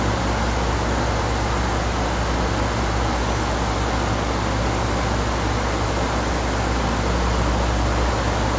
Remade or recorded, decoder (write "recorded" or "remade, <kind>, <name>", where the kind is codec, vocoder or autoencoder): recorded